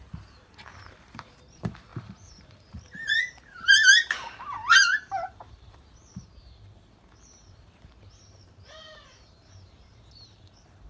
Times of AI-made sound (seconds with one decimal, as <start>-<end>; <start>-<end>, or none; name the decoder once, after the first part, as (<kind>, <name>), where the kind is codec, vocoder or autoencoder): 0.0-10.9 (vocoder, BigVGAN v2)